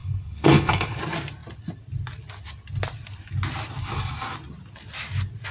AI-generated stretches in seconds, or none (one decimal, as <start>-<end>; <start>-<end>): 0.0-1.0

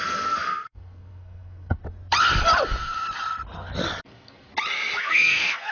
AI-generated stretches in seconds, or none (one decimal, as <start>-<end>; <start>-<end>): 0.0-1.8; 4.0-4.5; 5.0-5.7

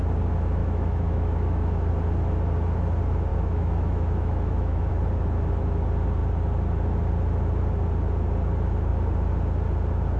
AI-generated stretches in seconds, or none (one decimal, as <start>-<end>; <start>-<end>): 0.6-1.9; 3.3-4.9

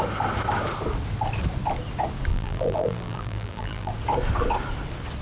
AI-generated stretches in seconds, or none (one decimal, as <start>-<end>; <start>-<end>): 2.3-3.9

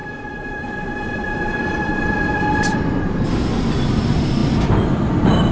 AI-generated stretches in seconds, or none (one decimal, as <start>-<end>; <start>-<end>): 0.0-3.3